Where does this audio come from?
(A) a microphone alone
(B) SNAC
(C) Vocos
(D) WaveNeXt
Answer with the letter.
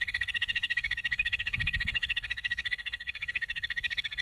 B